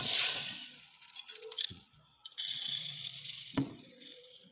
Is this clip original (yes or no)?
no